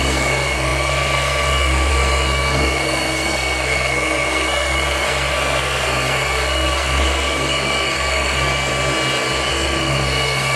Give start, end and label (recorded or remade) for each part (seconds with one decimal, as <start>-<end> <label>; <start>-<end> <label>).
0.0-8.7 remade; 8.7-9.5 recorded; 9.5-10.6 remade